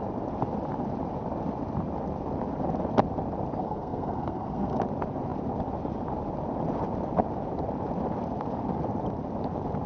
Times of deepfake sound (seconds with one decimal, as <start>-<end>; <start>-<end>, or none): 3.6-4.8